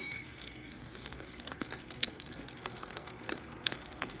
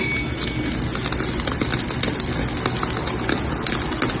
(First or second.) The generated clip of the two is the first